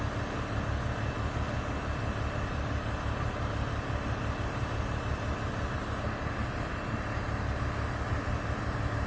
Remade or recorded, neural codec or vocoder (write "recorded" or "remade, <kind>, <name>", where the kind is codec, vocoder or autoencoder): recorded